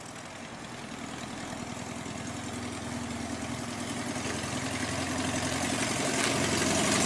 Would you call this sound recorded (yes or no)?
yes